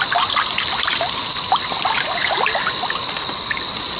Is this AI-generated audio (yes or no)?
no